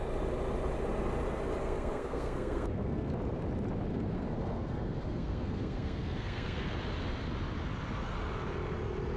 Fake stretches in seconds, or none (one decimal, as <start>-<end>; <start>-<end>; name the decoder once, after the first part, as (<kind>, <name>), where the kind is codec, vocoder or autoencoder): 1.6-3.1 (codec, SNAC); 3.9-6.7